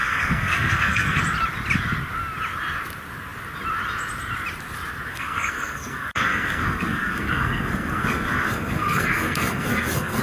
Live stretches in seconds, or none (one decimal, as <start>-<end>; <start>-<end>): 1.2-5.1